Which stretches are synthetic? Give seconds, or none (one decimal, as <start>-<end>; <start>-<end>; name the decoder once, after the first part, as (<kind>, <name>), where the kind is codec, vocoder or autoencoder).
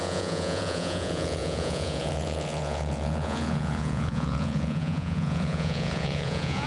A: 0.0-6.7 (vocoder, Vocos)